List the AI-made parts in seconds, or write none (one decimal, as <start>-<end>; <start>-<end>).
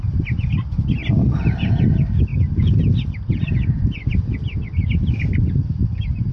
none